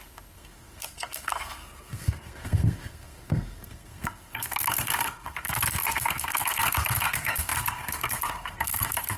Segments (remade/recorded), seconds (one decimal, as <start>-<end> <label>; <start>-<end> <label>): 0.0-9.2 remade